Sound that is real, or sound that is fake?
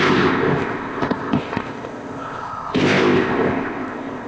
fake